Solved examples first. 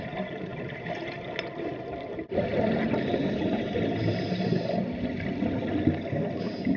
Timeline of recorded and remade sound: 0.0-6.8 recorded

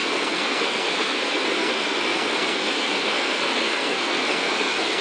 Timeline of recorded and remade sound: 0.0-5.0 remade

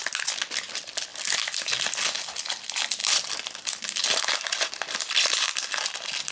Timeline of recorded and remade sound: 0.0-6.3 recorded

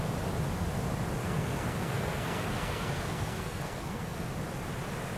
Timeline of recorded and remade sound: 0.0-1.2 recorded; 1.2-4.3 remade; 4.3-5.2 recorded

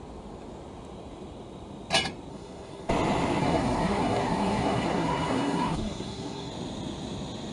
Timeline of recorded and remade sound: 0.0-2.3 recorded; 2.3-2.9 remade; 2.9-3.4 recorded; 3.4-6.5 remade; 6.5-7.5 recorded